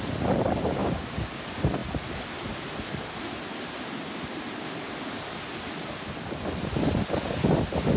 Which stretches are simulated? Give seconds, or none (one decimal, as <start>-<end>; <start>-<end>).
0.8-1.4